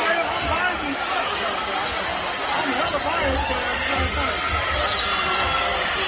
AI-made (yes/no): no